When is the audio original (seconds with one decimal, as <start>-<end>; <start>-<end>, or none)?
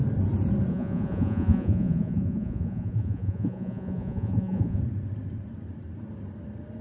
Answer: 0.0-0.7; 4.8-6.8